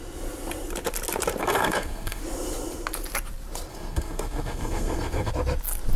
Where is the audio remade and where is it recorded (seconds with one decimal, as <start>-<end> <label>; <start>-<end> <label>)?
0.0-1.4 recorded; 1.4-2.2 remade; 2.2-3.7 recorded; 3.7-5.3 remade; 5.3-6.0 recorded